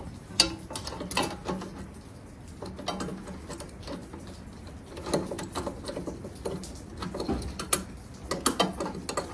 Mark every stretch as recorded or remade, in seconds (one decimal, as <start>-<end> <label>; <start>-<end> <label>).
0.0-9.3 recorded